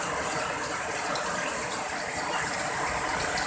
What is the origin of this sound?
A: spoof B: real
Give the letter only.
B